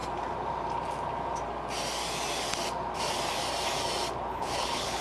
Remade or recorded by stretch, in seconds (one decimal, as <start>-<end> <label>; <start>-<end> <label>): 0.0-4.3 recorded; 4.3-5.0 remade